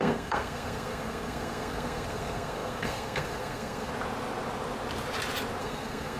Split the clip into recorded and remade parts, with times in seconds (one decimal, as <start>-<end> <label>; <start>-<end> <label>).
0.0-3.9 remade; 3.9-5.6 recorded; 5.6-6.2 remade